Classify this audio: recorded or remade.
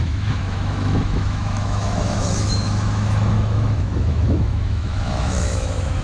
remade